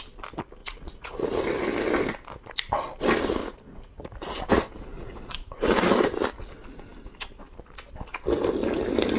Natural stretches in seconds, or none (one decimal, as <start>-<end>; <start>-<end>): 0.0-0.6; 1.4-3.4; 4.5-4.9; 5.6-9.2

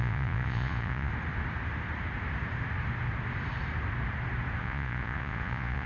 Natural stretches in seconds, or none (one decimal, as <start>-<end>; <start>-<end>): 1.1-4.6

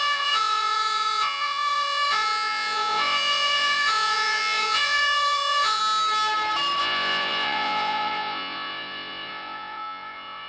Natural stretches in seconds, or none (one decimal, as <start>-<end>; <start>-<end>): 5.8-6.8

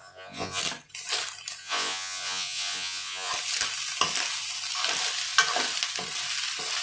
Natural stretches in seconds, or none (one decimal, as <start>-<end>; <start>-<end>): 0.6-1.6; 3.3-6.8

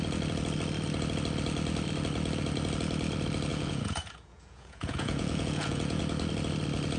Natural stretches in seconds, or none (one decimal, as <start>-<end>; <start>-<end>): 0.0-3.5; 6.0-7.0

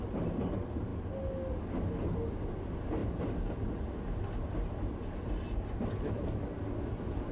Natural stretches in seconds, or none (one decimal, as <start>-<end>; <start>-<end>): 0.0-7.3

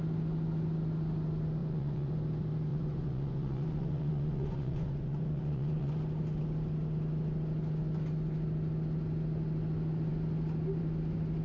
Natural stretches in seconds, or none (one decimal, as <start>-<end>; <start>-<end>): 0.0-1.6; 2.1-2.7; 5.9-11.4

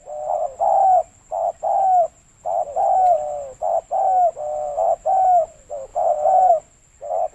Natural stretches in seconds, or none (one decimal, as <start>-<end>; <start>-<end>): 0.0-5.9; 6.5-7.3